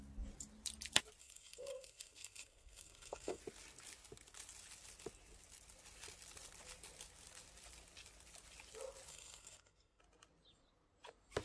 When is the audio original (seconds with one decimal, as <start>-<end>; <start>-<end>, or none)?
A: 0.0-1.2; 3.4-9.1; 10.0-11.4